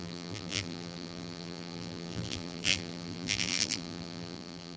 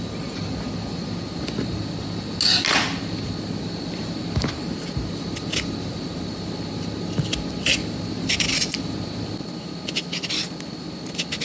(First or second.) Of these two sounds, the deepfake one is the first